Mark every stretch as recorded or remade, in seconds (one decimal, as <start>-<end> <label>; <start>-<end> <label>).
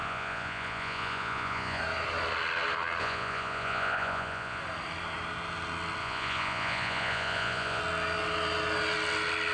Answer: 0.0-1.8 remade; 1.8-3.0 recorded; 3.0-4.6 remade; 4.6-6.0 recorded; 6.0-7.8 remade; 7.8-9.5 recorded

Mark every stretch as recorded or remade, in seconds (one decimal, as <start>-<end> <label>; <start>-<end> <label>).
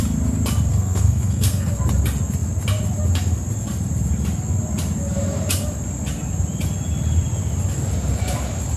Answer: 0.0-0.7 recorded; 0.7-1.7 remade; 1.7-8.8 recorded